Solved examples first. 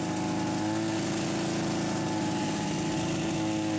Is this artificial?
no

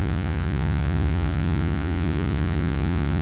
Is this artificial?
yes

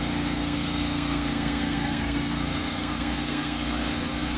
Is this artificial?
yes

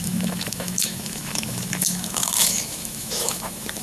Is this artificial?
yes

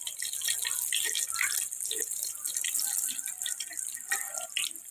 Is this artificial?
no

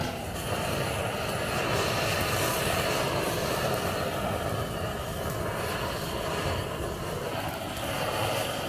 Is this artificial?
no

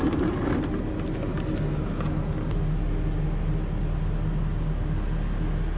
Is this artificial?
no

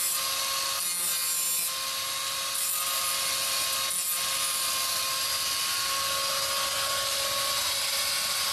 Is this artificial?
no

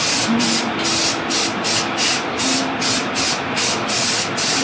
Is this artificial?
yes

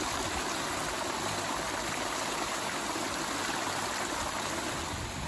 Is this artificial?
no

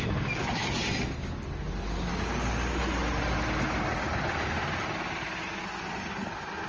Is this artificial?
no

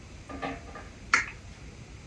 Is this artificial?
no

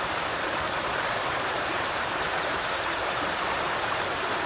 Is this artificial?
yes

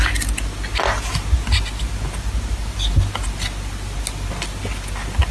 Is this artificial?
no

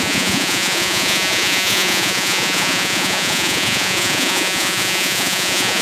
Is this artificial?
yes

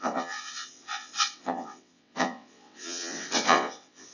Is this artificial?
yes